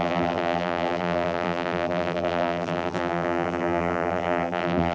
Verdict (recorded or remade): remade